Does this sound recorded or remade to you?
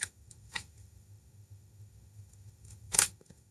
remade